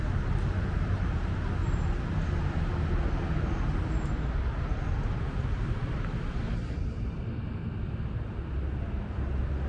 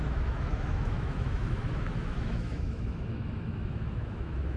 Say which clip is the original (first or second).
first